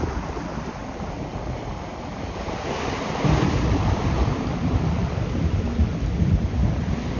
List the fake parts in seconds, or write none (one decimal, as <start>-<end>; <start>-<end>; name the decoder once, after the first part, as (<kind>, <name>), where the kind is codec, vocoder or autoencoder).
0.8-5.1 (vocoder, BigVGAN v2)